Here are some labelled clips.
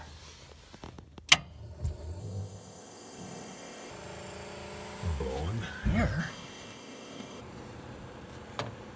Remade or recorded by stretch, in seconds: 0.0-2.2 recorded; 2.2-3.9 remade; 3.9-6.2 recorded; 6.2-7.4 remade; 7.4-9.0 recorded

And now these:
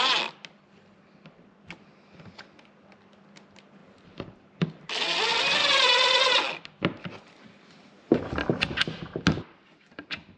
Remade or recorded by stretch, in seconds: 0.0-3.8 recorded; 3.8-4.8 remade; 4.8-10.4 recorded

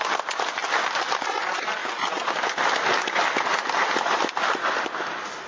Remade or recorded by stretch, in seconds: 0.0-5.5 recorded

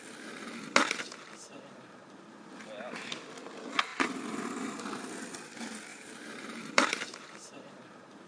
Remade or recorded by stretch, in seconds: 0.0-1.5 recorded; 1.5-2.2 remade; 2.2-5.9 recorded; 5.9-8.3 remade

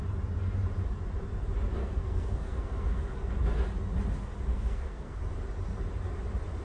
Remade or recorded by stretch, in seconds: 0.0-1.8 recorded; 1.8-3.3 remade; 3.3-4.5 recorded; 4.5-5.2 remade; 5.2-6.6 recorded

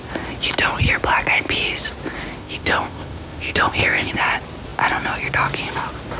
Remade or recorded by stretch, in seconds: 0.0-2.4 recorded; 2.4-4.1 remade; 4.1-6.2 recorded

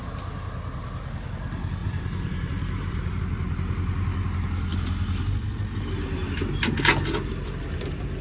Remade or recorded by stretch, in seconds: 0.0-1.8 recorded; 1.8-3.2 remade; 3.2-8.2 recorded